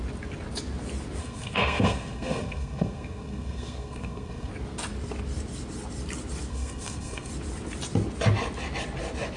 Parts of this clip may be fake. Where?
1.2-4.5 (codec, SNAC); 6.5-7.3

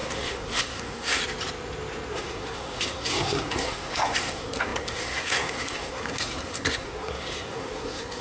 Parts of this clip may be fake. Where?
0.0-1.2 (codec, SNAC); 2.1-8.2

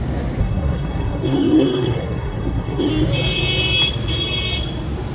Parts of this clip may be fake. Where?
0.4-2.9 (codec, SNAC)

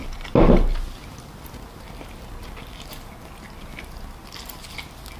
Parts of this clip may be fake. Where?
none

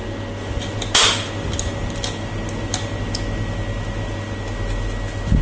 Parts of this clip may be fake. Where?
none

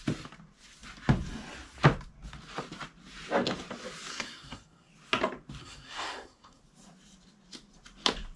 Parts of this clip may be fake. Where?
4.1-4.9 (codec, SNAC); 5.6-6.6